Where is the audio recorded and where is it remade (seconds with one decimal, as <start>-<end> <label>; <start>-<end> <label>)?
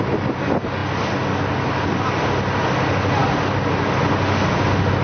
0.0-5.0 recorded